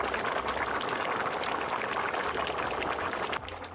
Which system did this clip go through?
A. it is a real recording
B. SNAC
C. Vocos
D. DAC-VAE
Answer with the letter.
A